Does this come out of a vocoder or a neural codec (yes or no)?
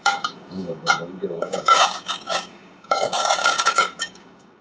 yes